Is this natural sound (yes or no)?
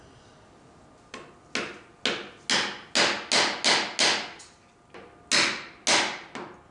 yes